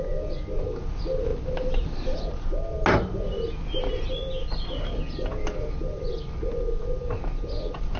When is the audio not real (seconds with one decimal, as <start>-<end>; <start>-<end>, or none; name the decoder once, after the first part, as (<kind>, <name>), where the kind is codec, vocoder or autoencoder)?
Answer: none